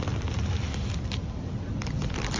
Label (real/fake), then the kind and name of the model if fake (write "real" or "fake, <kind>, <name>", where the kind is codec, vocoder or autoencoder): fake, vocoder, BigVGAN v2